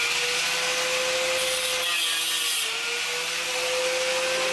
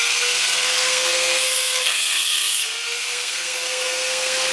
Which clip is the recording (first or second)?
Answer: first